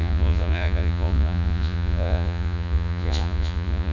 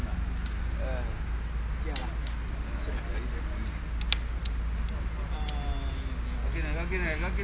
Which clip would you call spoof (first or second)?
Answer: first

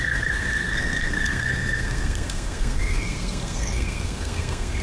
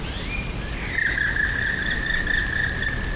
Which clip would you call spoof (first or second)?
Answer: first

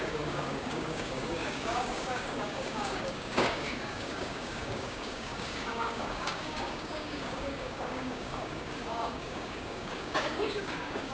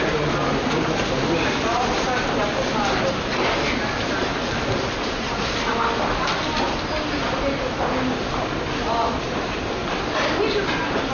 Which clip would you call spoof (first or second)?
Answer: first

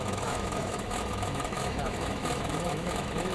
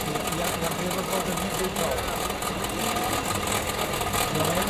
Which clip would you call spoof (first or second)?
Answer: first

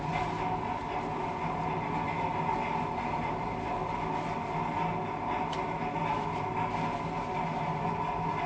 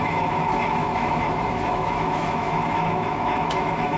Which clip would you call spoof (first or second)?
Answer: second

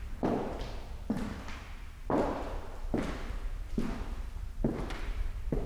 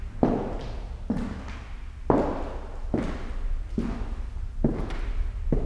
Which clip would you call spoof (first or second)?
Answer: first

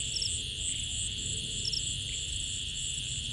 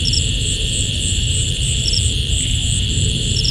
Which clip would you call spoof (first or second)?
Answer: second